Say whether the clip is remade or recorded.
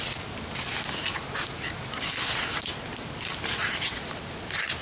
recorded